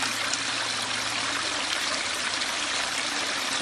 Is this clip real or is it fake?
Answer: real